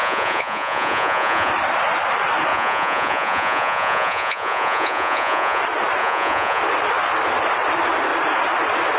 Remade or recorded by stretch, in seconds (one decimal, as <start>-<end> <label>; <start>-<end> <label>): 0.0-1.5 remade; 1.5-2.5 recorded; 2.5-5.6 remade; 5.6-6.0 recorded; 6.0-6.6 remade; 6.6-9.0 recorded